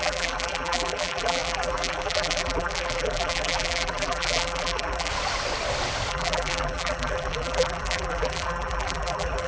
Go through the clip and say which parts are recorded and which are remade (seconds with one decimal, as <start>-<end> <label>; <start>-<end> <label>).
0.0-5.1 remade; 5.1-6.1 recorded; 6.1-9.5 remade